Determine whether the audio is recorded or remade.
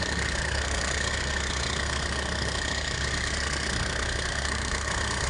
remade